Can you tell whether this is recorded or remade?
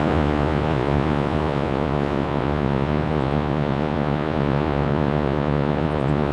remade